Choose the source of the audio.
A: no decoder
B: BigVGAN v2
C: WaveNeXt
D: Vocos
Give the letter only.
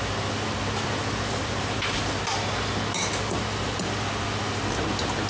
A